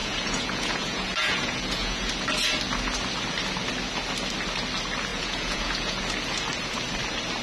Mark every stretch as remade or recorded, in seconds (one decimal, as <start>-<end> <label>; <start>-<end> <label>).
0.0-2.1 remade; 2.1-5.1 recorded; 5.1-6.0 remade; 6.0-7.4 recorded